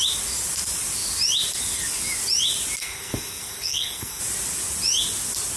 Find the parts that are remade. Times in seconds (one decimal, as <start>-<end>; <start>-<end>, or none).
2.8-4.2